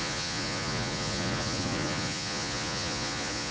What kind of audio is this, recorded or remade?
remade